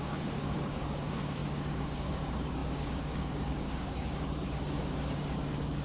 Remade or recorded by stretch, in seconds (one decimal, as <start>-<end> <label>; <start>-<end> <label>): 0.0-5.8 remade